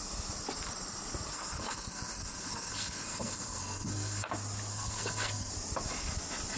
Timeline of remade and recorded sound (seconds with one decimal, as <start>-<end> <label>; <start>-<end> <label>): 0.0-1.3 recorded; 1.3-4.3 remade; 4.3-4.7 recorded; 4.7-5.5 remade; 5.5-6.6 recorded